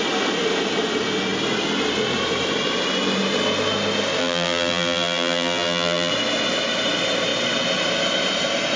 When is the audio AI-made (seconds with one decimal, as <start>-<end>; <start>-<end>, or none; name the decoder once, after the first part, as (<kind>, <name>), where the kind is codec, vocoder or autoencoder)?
4.2-6.1 (vocoder, BigVGAN v2)